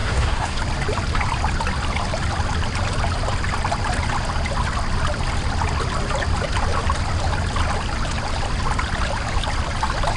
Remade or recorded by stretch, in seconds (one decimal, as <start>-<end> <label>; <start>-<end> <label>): 0.0-0.6 remade; 0.6-10.2 recorded